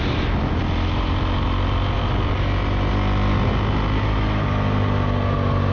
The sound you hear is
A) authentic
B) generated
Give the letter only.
A